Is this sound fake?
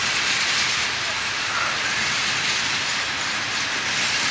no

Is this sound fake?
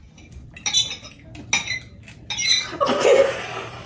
no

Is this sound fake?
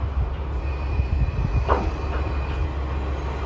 no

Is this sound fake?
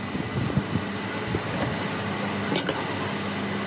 no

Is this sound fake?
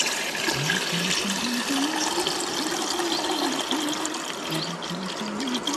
no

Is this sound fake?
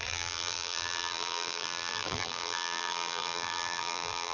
yes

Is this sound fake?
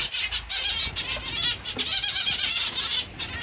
no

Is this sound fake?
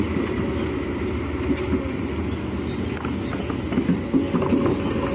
no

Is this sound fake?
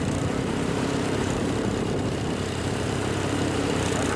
yes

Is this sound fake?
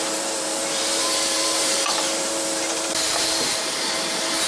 yes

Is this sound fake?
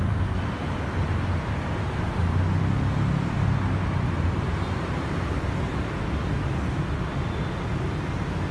no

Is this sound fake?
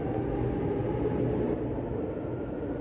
no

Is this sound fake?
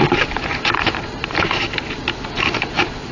yes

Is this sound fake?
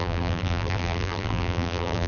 yes